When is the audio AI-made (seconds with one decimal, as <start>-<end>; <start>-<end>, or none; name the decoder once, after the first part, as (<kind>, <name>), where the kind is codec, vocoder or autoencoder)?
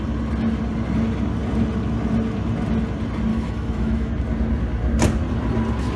3.3-4.1 (autoencoder, DAC-VAE)